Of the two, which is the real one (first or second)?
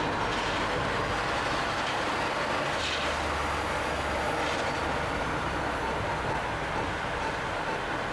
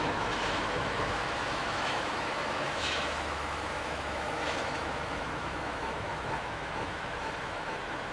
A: first